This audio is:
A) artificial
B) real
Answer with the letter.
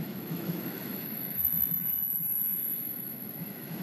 A